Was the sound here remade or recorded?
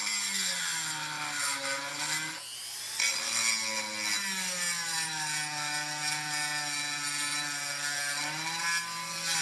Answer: recorded